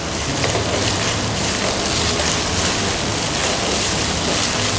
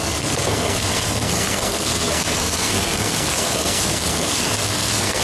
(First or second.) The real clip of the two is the first